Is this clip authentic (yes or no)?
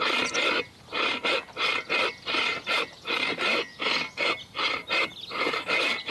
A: yes